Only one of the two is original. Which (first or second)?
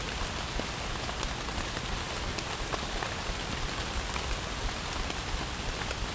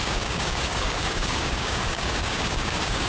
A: first